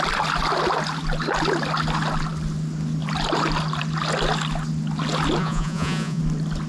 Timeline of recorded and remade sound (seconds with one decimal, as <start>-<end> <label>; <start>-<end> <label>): 0.0-5.4 recorded; 5.4-6.2 remade; 6.2-6.7 recorded